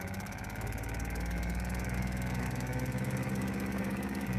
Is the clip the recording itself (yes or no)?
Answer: no